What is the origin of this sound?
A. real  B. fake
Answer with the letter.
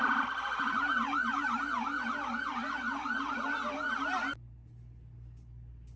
A